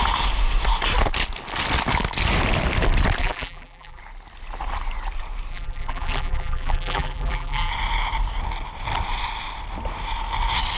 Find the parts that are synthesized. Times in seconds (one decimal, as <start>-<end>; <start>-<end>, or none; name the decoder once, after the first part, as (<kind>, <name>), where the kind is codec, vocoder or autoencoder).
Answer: 3.2-4.0 (vocoder, BigVGAN v2); 5.5-7.7